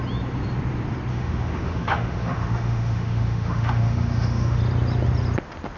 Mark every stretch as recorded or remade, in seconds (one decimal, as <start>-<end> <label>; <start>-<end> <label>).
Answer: 0.0-1.1 recorded; 1.1-4.6 remade; 4.6-5.8 recorded